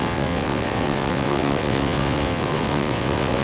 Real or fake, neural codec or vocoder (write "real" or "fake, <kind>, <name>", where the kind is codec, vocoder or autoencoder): fake, vocoder, WaveNeXt